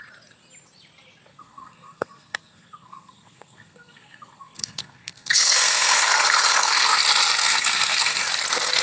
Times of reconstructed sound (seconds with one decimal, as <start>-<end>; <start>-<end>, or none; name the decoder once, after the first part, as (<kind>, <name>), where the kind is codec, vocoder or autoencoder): 1.3-6.1 (codec, SNAC); 6.5-7.0; 7.4-8.2

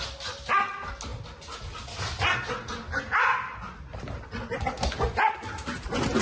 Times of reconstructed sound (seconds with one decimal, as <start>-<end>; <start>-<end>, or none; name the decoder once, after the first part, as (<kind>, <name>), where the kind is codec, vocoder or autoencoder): none

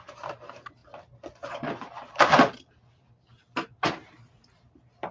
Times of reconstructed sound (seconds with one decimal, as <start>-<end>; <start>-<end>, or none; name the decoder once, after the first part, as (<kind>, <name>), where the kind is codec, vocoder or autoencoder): 0.0-0.8 (vocoder, BigVGAN v2); 3.9-5.1

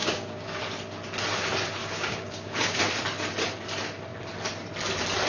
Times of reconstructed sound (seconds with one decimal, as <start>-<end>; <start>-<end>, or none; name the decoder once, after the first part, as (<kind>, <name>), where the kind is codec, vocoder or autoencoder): 0.0-0.6 (codec, DAC); 1.8-2.8